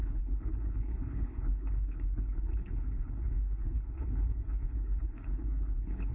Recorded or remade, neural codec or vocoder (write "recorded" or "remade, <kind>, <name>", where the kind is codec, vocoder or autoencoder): remade, codec, HILCodec